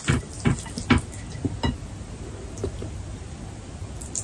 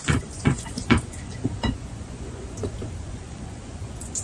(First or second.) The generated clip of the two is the second